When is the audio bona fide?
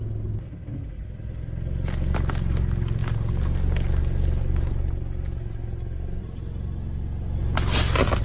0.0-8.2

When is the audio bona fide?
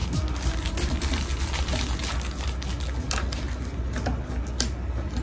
0.0-5.2